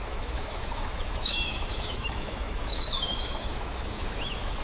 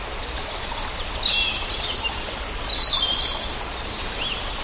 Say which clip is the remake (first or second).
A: first